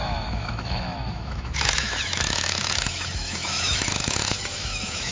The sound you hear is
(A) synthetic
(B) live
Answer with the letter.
A